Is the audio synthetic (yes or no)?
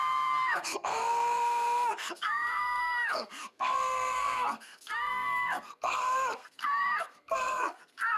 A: yes